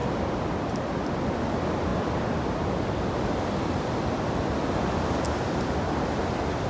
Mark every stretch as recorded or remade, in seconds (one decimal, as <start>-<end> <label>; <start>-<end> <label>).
0.0-6.7 recorded

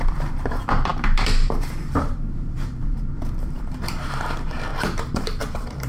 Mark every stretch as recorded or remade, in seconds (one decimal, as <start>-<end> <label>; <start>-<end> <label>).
0.0-5.9 remade

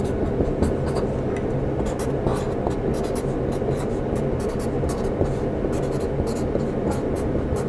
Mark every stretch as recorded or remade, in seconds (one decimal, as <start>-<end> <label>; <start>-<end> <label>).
0.0-7.7 recorded